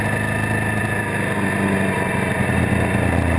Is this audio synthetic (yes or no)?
no